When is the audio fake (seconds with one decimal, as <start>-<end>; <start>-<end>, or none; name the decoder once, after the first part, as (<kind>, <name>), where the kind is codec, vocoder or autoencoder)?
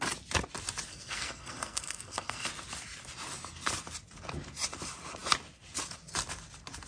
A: 0.9-2.5 (codec, SNAC)